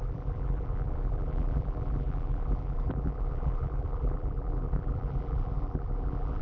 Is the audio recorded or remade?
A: remade